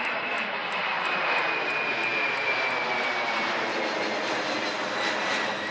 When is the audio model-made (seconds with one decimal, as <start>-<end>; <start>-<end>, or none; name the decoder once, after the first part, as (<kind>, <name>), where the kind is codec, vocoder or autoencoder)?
none